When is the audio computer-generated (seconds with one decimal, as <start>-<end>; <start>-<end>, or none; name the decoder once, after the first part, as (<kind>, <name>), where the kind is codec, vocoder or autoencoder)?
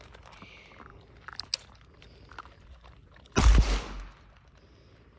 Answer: none